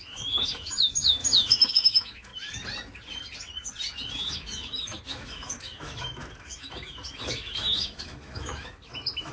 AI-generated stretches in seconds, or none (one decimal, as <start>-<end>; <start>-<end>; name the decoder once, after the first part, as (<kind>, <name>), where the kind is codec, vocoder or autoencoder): 0.0-2.3 (autoencoder, DAC-VAE); 4.1-9.3